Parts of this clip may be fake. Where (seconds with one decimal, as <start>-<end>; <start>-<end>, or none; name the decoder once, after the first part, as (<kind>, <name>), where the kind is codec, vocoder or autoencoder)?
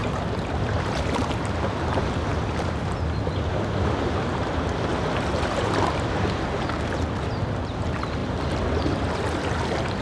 none